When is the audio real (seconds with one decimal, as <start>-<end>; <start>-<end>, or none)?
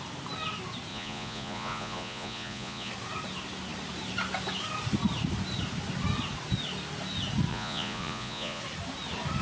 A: 0.0-0.9; 2.9-7.5; 8.6-9.4